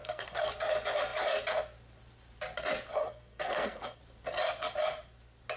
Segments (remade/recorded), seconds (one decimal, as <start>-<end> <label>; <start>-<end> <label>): 0.0-0.5 remade; 0.5-3.0 recorded; 3.0-4.0 remade; 4.0-5.6 recorded